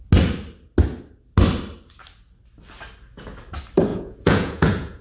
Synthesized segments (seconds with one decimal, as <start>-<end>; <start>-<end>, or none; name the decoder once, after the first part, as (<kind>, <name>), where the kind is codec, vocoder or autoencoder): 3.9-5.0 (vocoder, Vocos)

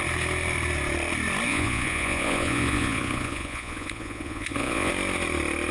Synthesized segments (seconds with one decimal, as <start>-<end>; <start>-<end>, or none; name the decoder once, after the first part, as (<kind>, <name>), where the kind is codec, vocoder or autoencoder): 1.5-4.9 (vocoder, Vocos)

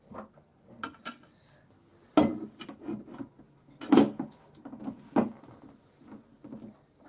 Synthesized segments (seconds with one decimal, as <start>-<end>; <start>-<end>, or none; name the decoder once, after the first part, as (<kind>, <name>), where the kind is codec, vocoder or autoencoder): none

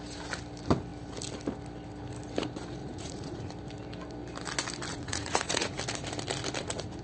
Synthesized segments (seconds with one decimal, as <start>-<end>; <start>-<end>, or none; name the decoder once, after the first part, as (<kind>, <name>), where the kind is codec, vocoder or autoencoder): 2.8-3.5 (vocoder, Vocos); 4.9-5.8

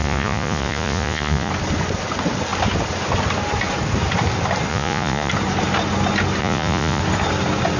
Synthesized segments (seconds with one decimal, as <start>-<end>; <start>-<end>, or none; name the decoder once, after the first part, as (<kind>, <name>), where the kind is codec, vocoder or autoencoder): 0.0-1.5 (vocoder, Vocos); 4.7-5.3; 6.4-7.0